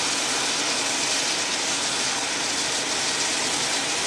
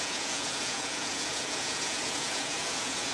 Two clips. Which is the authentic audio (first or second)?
first